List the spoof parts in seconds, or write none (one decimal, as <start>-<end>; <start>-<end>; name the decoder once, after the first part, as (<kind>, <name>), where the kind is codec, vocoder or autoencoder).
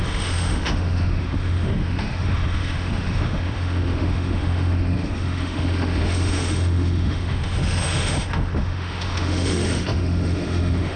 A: 0.0-11.0 (autoencoder, DAC-VAE)